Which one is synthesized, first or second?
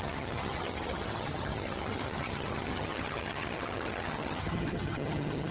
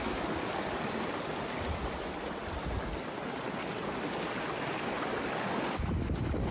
first